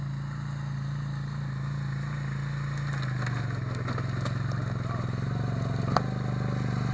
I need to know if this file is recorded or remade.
recorded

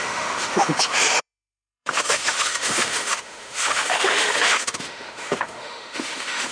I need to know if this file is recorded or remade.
remade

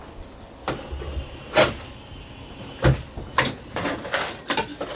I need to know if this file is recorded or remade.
recorded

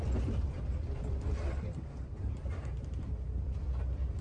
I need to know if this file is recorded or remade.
recorded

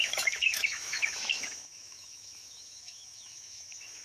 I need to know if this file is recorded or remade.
remade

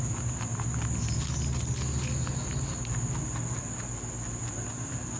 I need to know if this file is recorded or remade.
recorded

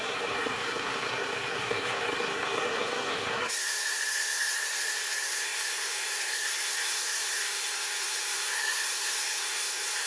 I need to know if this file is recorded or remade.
remade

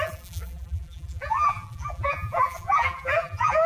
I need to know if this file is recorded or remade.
remade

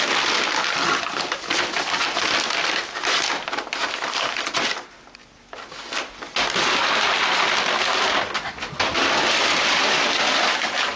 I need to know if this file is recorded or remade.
recorded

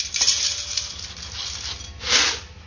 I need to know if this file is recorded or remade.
recorded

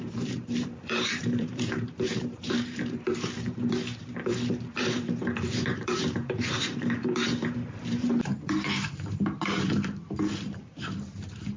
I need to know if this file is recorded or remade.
remade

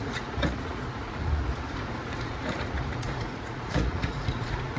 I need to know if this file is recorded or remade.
remade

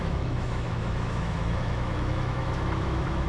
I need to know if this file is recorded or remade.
remade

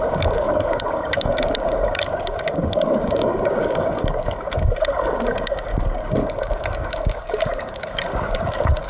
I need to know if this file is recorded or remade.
remade